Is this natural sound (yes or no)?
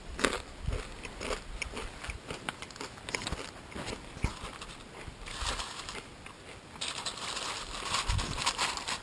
yes